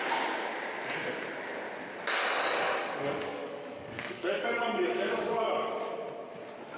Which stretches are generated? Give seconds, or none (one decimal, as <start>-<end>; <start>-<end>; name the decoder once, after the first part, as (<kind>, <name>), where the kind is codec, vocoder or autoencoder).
2.2-5.7 (codec, DAC)